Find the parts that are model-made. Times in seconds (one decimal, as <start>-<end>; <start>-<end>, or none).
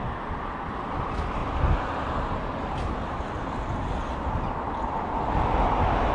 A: none